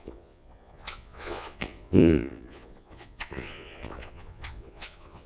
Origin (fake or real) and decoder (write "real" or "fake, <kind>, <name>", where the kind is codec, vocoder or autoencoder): fake, vocoder, Vocos